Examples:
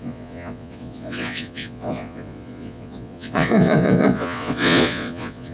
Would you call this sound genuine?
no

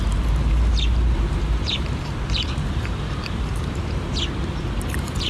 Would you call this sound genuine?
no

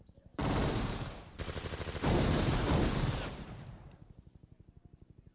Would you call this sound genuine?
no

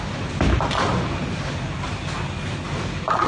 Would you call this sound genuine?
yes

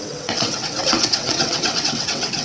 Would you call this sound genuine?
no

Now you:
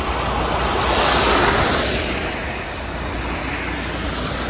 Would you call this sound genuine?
yes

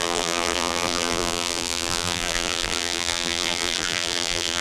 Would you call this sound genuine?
no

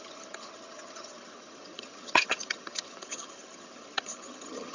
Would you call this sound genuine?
no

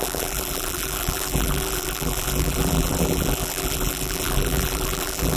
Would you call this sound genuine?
no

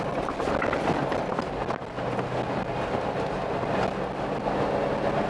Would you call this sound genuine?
yes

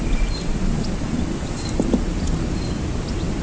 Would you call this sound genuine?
yes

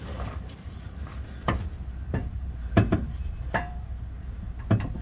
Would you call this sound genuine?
no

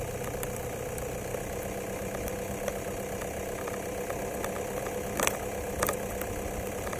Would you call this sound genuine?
yes